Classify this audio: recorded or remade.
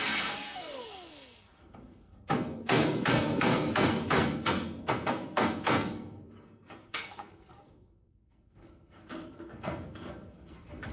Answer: remade